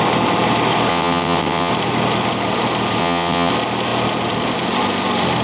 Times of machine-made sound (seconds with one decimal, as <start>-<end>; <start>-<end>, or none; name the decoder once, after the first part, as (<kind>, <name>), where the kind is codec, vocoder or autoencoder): 0.9-1.7 (vocoder, WaveNeXt); 3.0-3.5